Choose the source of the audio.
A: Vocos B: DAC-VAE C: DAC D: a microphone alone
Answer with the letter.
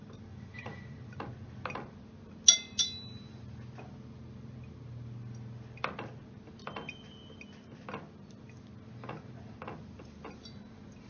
D